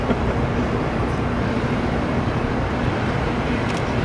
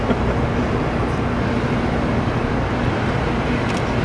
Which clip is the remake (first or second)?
first